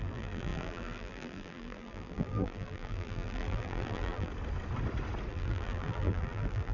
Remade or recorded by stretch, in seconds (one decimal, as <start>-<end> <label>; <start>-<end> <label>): 0.0-4.3 remade; 4.3-5.3 recorded; 5.3-6.7 remade